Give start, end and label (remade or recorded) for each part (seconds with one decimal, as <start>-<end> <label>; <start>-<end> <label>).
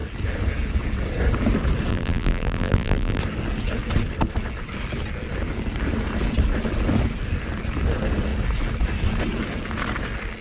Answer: 0.0-1.9 recorded; 1.9-3.2 remade; 3.2-10.4 recorded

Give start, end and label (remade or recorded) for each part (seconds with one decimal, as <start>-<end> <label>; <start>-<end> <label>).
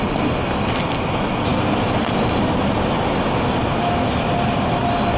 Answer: 0.0-5.2 recorded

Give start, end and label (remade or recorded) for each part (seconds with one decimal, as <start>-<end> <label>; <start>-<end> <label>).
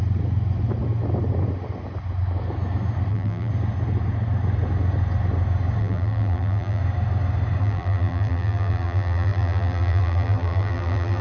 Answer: 0.0-3.1 recorded; 3.1-3.5 remade; 3.5-5.8 recorded; 5.8-6.8 remade; 6.8-7.6 recorded; 7.6-11.2 remade